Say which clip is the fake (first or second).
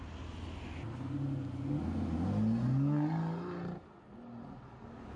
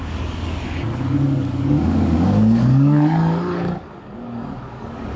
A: second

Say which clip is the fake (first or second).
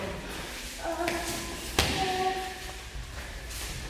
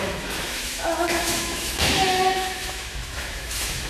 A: second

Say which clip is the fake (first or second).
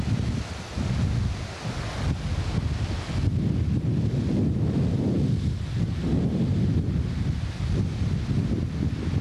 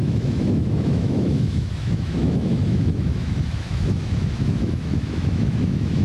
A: second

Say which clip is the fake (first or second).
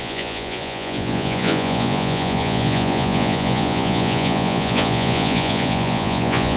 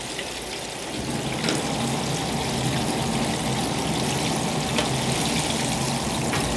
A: first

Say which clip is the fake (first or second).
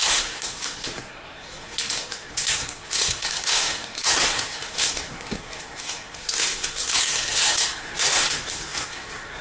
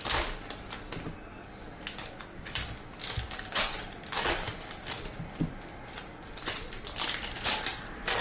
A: first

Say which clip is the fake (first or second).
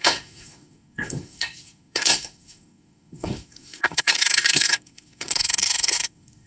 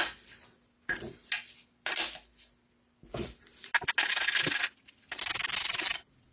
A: first